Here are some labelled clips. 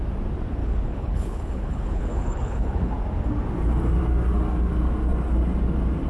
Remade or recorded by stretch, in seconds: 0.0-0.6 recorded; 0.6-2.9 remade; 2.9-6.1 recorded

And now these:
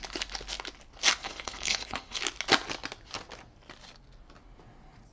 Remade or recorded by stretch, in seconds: 0.0-1.2 recorded; 1.2-2.2 remade; 2.2-5.1 recorded

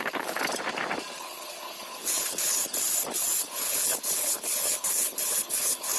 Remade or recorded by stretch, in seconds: 0.0-0.5 remade; 0.5-1.2 recorded; 1.2-2.6 remade; 2.6-3.4 recorded; 3.4-6.0 remade